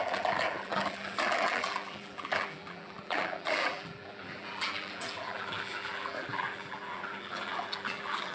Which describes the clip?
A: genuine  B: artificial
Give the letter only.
B